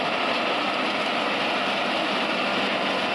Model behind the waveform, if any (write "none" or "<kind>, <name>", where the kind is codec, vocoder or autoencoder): none